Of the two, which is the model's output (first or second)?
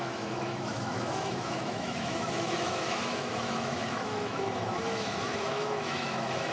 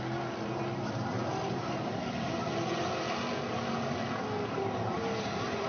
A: first